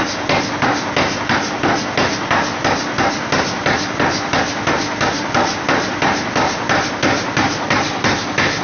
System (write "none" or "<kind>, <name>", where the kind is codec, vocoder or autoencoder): none